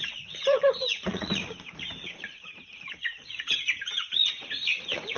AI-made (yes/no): yes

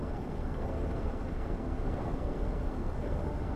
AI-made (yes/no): yes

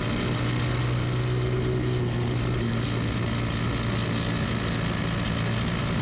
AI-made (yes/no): no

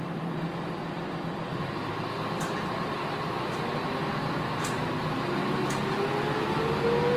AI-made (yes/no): no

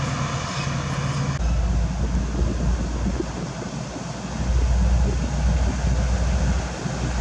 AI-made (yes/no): no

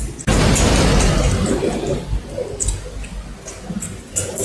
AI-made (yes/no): no